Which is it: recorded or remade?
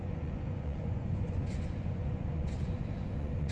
remade